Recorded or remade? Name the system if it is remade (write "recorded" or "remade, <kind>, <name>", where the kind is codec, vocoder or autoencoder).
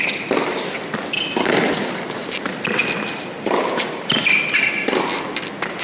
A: recorded